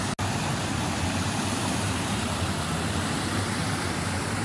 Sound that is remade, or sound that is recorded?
recorded